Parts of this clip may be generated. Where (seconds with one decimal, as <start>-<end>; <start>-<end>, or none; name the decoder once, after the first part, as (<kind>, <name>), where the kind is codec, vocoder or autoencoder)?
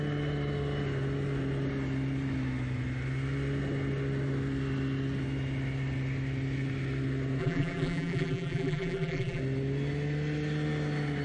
7.4-9.4 (vocoder, BigVGAN v2)